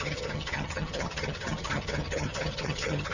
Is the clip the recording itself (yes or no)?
no